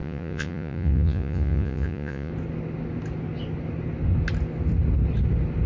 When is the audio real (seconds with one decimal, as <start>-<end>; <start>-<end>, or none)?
2.3-5.7